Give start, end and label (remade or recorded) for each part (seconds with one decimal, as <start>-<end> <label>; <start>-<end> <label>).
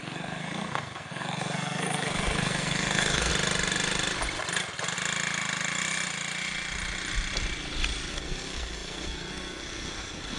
0.0-3.3 remade; 3.3-8.1 recorded; 8.1-10.4 remade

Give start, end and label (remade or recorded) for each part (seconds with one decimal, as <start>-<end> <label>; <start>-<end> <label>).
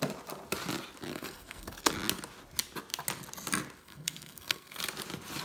0.0-1.1 recorded; 1.1-1.9 remade; 1.9-3.8 recorded; 3.8-4.8 remade; 4.8-5.4 recorded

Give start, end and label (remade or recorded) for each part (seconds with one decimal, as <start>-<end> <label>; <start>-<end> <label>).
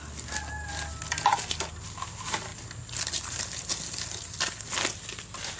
0.0-5.6 recorded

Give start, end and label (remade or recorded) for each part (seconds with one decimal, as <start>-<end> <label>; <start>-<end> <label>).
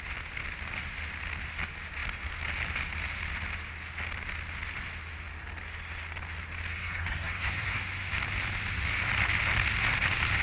0.0-6.7 recorded; 6.7-7.8 remade; 7.8-10.4 recorded